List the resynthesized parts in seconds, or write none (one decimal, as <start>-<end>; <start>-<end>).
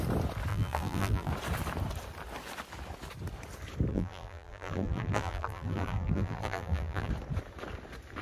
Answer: 0.5-1.3; 3.9-7.1